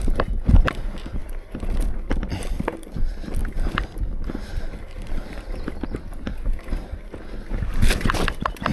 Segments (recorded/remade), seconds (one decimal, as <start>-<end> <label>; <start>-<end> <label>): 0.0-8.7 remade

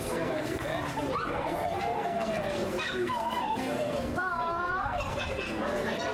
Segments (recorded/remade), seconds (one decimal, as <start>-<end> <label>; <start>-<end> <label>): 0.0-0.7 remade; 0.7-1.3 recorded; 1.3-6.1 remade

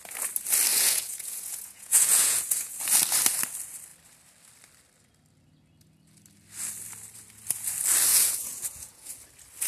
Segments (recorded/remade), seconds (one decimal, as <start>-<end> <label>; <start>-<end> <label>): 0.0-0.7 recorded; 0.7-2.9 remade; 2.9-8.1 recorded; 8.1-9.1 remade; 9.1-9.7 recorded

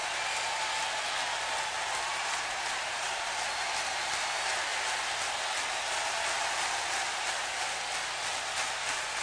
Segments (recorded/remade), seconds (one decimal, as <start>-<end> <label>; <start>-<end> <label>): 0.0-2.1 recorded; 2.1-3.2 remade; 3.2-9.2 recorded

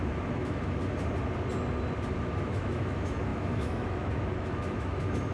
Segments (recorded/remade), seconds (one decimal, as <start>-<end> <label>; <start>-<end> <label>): 0.0-0.8 remade; 0.8-2.5 recorded; 2.5-5.3 remade

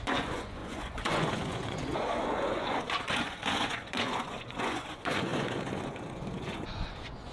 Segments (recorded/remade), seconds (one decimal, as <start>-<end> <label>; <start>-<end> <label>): 0.0-7.3 remade

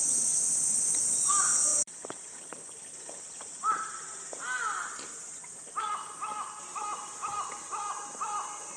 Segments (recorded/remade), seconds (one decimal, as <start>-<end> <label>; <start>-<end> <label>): 0.0-8.8 recorded